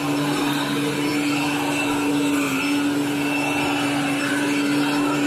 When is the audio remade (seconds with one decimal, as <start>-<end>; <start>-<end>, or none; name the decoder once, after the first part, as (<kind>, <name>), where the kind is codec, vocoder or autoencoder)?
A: none